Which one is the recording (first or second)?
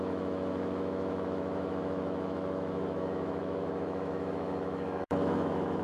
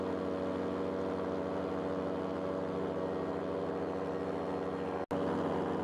second